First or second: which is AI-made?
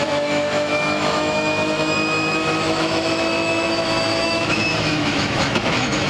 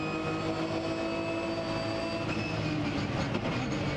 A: first